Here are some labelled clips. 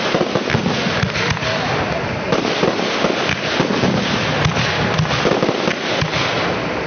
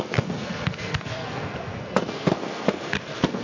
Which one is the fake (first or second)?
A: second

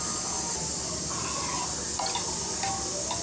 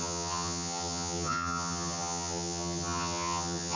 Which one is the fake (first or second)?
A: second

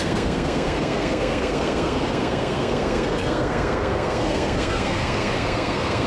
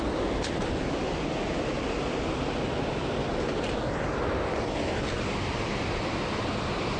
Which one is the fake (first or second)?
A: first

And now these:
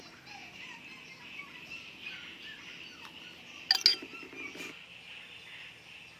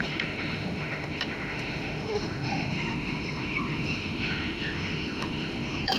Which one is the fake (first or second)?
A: second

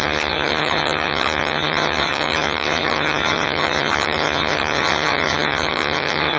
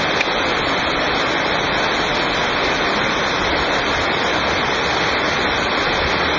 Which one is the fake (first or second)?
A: first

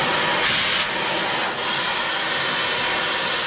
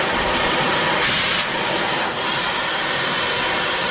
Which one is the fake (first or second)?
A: second